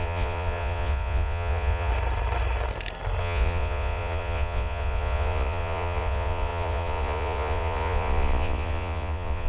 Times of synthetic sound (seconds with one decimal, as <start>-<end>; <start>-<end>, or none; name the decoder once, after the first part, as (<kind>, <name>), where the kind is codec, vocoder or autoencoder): 0.0-1.9 (vocoder, Vocos); 3.2-9.5